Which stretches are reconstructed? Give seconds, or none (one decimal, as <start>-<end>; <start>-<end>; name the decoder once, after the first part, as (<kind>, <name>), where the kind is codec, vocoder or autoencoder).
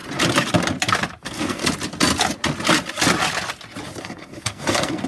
1.2-1.6 (codec, SNAC); 4.0-5.1